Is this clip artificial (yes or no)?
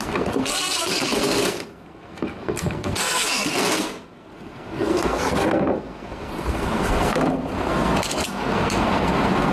yes